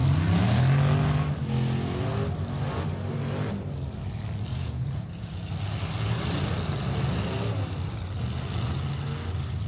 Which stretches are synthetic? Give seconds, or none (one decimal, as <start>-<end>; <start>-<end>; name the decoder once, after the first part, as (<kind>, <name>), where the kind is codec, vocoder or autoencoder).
4.5-5.5 (vocoder, Vocos)